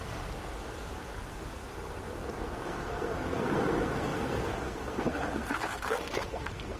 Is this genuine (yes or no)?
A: no